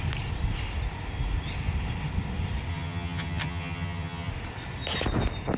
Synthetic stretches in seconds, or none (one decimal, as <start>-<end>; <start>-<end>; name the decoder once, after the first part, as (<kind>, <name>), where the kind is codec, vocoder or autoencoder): 2.7-4.3 (vocoder, HiFi-GAN)